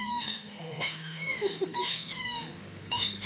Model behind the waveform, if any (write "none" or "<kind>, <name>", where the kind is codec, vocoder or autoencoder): autoencoder, DAC-VAE